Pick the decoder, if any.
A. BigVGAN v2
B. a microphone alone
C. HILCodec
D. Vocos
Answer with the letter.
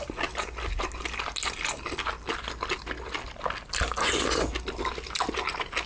B